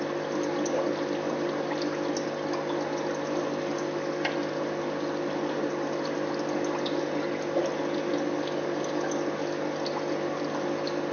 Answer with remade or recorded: recorded